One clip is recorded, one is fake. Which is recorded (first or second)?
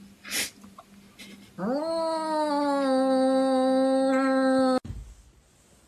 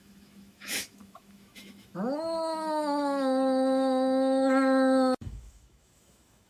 first